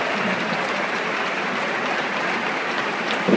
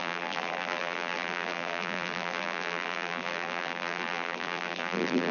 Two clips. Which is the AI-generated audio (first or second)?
second